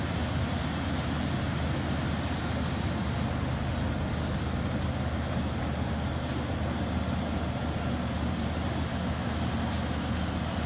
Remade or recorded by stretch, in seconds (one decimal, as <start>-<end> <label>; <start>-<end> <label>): 0.0-8.9 recorded; 8.9-9.4 remade; 9.4-10.7 recorded